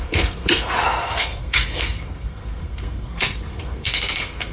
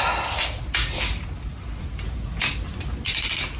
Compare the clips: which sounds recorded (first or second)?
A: second